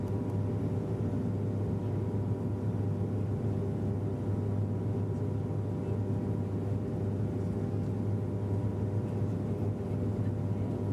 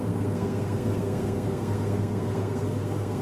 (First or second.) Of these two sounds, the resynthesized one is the second